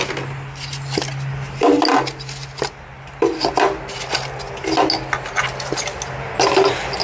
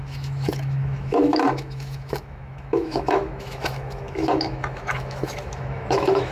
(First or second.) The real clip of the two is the first